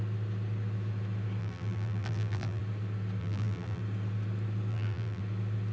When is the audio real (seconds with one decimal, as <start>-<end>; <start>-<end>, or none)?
0.0-1.4; 2.6-3.2; 3.8-4.7; 5.2-5.7